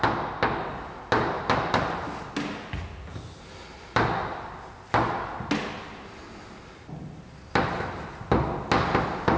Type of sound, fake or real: real